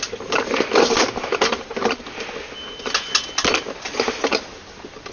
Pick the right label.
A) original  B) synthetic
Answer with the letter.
A